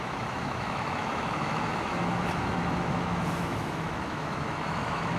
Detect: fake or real fake